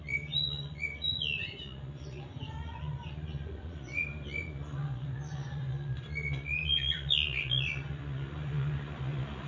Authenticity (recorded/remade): remade